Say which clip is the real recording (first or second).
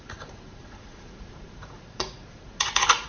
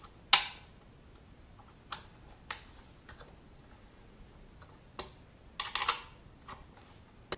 second